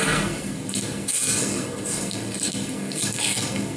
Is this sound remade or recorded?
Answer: remade